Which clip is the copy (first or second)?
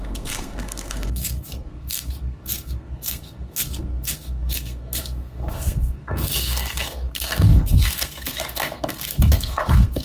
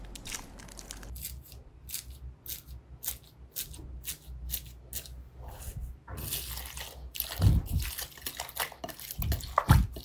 first